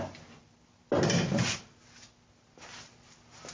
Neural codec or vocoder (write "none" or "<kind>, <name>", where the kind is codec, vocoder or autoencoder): none